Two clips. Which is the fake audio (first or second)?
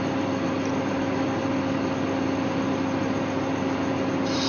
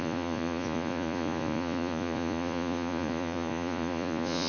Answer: second